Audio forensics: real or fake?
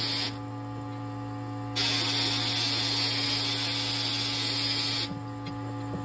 real